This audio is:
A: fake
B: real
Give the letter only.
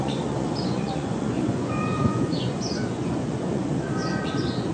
A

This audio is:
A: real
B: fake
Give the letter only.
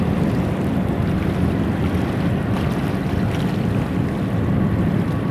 A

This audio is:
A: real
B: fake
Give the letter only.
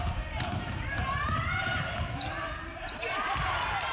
B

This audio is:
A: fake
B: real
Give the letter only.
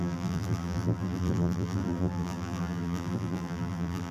A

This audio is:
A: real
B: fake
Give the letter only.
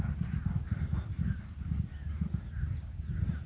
A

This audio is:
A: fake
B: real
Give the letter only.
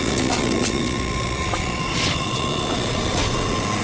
A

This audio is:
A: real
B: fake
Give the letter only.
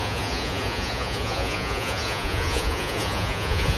B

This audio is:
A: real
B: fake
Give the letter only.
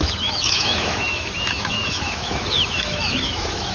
B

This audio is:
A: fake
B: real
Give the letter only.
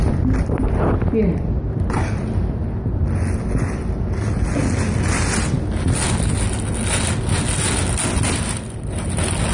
B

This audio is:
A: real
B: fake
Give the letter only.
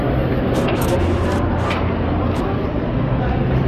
A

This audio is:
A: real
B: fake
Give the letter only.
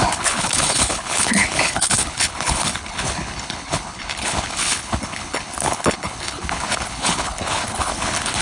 B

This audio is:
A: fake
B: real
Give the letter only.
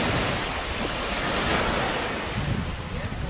B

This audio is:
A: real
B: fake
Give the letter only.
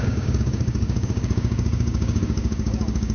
B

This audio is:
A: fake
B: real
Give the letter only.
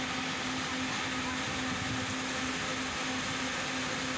B